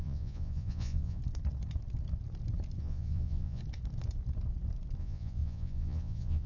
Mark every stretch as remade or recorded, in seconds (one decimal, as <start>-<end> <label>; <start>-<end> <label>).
0.0-1.2 remade; 1.2-2.8 recorded; 2.8-3.6 remade; 3.6-5.0 recorded; 5.0-6.5 remade